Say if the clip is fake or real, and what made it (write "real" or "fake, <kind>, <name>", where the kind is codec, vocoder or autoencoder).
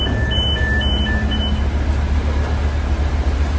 real